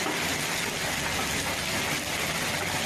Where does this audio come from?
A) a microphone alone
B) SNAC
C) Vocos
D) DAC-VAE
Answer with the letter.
A